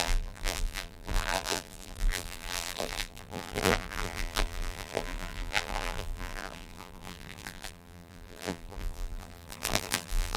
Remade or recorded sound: remade